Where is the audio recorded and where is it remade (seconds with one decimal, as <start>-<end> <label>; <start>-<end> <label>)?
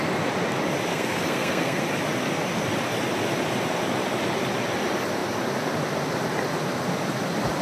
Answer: 0.0-0.9 recorded; 0.9-1.8 remade; 1.8-7.6 recorded